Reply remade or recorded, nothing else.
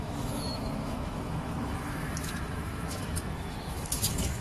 remade